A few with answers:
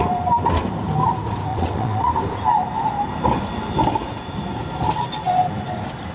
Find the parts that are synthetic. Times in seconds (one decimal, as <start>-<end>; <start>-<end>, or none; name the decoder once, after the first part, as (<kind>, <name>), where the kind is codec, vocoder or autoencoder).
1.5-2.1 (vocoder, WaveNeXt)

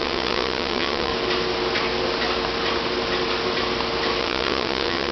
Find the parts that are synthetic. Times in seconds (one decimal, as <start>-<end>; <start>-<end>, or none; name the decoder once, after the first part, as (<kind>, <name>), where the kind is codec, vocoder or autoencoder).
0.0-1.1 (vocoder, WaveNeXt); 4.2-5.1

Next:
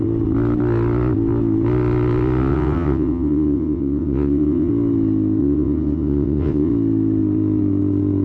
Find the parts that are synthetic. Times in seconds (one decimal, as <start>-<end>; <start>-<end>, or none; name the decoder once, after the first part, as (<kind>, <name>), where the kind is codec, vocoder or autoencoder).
2.5-4.7 (vocoder, WaveNeXt); 5.4-6.7

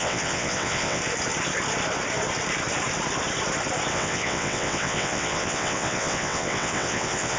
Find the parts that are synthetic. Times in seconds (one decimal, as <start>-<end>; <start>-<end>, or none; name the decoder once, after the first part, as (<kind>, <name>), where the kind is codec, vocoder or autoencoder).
0.0-1.0 (vocoder, WaveNeXt); 3.9-7.4

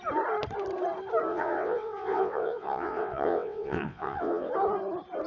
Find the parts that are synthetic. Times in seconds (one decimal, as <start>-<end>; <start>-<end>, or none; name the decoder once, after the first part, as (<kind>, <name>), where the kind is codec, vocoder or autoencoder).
1.3-4.5 (vocoder, WaveNeXt)